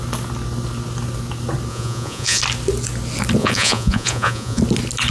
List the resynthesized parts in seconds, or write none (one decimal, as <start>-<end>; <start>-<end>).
1.7-2.4; 3.4-4.6